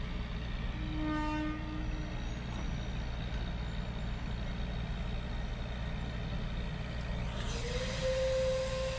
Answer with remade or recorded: recorded